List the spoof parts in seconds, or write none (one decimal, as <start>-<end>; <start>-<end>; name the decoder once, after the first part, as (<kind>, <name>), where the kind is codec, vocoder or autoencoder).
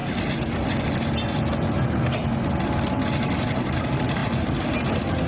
none